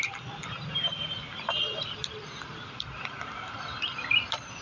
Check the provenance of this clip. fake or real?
real